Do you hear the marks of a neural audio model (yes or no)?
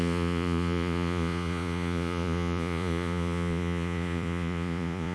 yes